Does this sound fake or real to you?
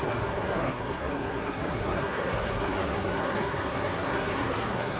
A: fake